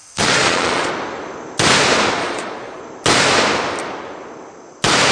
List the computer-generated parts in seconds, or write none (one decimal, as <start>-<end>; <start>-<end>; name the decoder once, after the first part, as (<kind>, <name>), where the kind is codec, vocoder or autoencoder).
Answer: 0.0-0.9 (vocoder, Vocos); 2.2-2.8